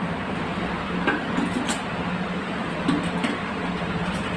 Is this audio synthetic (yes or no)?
no